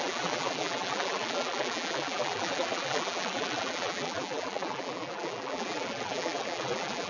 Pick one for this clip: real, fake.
fake